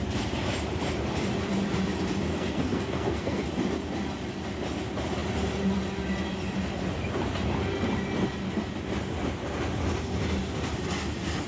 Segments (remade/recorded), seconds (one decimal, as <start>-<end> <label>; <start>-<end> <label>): 0.0-2.3 recorded; 2.3-3.4 remade; 3.4-11.5 recorded